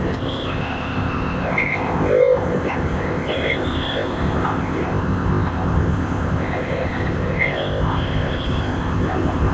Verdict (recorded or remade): remade